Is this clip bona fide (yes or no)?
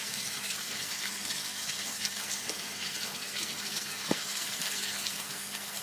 no